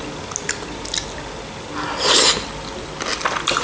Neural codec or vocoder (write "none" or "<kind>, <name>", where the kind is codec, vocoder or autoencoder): none